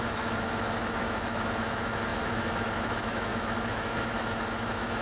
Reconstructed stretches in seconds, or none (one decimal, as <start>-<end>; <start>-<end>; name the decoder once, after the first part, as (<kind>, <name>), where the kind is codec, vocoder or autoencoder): 0.0-5.0 (autoencoder, DAC-VAE)